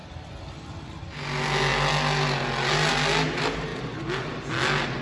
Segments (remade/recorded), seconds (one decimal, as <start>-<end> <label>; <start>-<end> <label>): 0.0-5.0 recorded